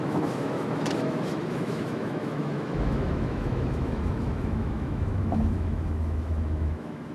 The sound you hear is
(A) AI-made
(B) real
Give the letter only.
A